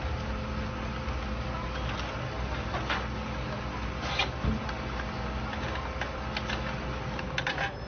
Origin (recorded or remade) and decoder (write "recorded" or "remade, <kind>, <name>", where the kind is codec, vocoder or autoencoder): recorded